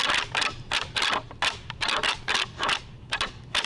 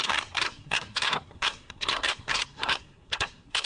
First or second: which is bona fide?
first